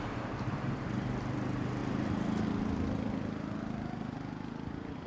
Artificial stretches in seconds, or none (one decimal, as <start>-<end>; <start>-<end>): 0.0-1.8